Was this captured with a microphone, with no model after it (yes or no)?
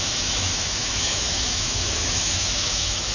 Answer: no